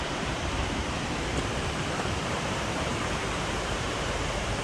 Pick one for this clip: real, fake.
fake